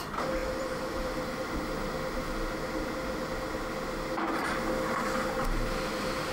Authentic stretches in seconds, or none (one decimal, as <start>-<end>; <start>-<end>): 0.0-0.4; 1.5-6.3